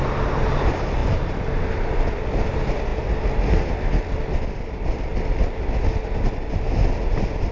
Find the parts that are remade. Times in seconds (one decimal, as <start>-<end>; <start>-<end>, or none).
none